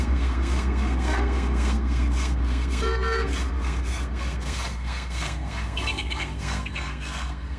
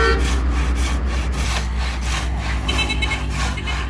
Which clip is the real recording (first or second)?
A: second